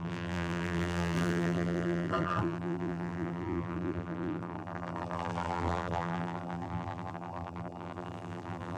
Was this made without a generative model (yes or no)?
no